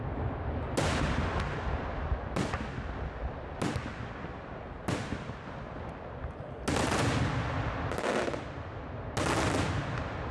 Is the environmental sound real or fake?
real